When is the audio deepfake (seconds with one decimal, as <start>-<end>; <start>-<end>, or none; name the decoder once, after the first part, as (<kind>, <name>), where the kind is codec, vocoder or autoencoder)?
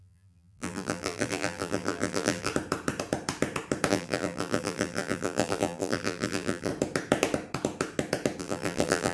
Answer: 0.0-2.5 (vocoder, BigVGAN v2); 3.9-6.7; 8.4-9.1